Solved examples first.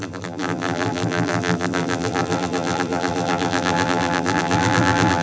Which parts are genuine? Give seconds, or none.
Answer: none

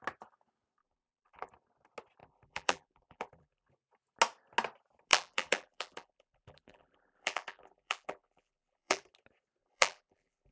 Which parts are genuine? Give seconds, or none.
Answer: 0.0-0.8; 1.5-2.2; 3.7-5.1; 9.0-9.6

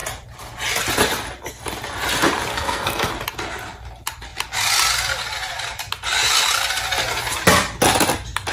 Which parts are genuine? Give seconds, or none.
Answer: 0.0-2.5; 3.1-8.5

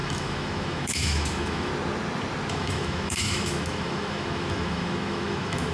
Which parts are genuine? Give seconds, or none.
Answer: 1.7-2.5